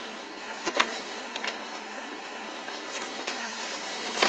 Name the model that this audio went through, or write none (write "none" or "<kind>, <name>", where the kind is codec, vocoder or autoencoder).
codec, SNAC